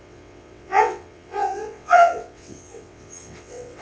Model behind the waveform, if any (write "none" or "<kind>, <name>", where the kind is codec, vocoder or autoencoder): vocoder, WaveNeXt